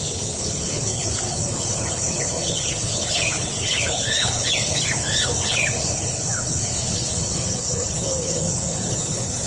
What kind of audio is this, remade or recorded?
remade